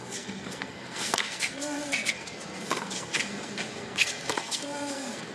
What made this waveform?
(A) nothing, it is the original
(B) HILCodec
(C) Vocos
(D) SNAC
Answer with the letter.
D